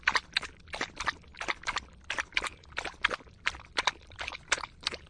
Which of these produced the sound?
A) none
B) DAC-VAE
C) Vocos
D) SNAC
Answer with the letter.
A